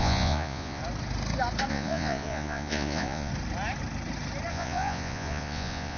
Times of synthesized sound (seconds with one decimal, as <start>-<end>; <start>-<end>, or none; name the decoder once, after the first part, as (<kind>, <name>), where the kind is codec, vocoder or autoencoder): 0.0-0.8 (vocoder, Vocos); 1.7-3.3; 4.5-6.0